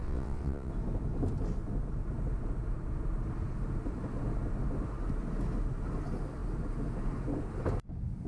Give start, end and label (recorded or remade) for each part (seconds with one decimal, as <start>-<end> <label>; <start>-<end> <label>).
0.0-0.7 remade; 0.7-8.3 recorded